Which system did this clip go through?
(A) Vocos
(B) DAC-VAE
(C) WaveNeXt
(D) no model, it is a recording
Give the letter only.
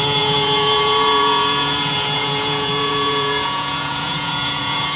A